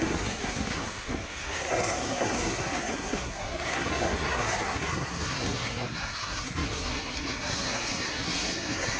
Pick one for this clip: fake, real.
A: fake